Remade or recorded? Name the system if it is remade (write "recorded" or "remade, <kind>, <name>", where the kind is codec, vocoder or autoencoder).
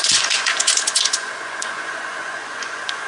remade, vocoder, Vocos